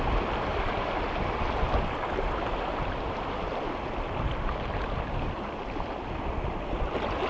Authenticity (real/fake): real